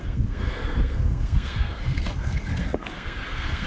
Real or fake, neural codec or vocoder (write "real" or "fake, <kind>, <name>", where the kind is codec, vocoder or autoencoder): fake, codec, SNAC